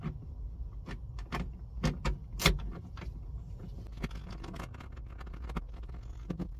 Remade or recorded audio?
recorded